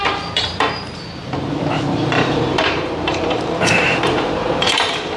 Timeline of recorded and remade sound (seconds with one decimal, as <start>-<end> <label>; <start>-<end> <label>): 0.0-1.2 remade; 1.2-1.9 recorded; 1.9-5.2 remade